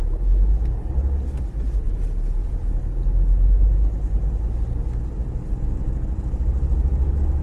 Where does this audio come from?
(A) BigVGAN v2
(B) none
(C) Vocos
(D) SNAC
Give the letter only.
B